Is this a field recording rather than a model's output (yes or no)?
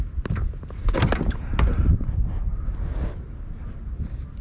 yes